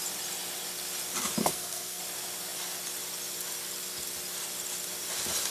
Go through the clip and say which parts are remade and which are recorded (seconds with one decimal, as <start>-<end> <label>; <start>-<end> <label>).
0.0-1.4 recorded; 1.4-2.0 remade; 2.0-5.5 recorded